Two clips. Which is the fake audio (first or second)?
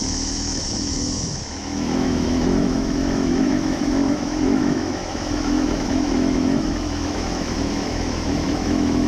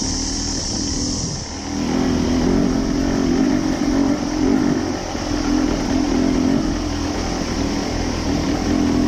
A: first